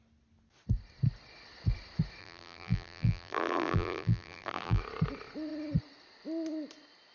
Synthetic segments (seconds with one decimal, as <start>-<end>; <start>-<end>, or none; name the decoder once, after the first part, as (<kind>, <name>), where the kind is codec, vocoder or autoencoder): 2.2-4.8 (vocoder, BigVGAN v2)